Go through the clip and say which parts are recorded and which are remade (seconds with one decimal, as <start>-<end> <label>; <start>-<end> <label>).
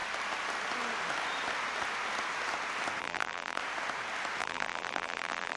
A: 0.0-3.0 recorded; 3.0-3.6 remade; 3.6-4.4 recorded; 4.4-5.6 remade